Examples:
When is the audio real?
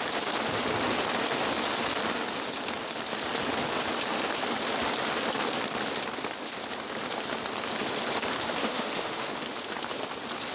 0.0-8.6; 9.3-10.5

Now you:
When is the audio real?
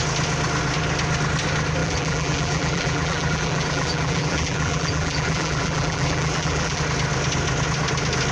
0.0-1.8; 6.8-8.3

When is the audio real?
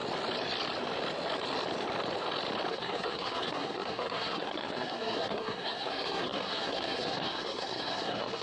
0.0-2.7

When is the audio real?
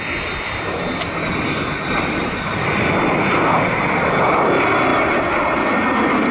0.0-6.3